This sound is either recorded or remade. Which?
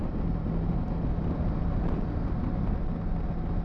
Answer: recorded